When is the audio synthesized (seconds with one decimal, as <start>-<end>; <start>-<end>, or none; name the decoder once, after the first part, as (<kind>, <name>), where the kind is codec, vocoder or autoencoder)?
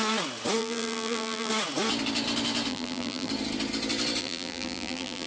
0.6-1.5 (vocoder, BigVGAN v2); 2.7-3.3; 4.2-5.3